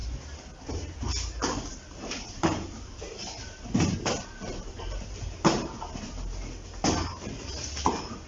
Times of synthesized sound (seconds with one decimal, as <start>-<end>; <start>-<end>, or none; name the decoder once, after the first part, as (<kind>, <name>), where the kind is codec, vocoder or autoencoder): 1.7-6.7 (vocoder, BigVGAN v2)